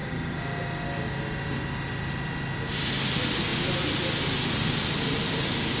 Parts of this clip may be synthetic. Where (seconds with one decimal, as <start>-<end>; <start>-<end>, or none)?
none